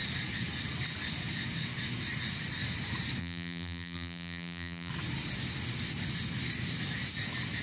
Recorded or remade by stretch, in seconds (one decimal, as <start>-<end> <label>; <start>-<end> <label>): 0.0-3.2 recorded; 3.2-4.9 remade; 4.9-7.6 recorded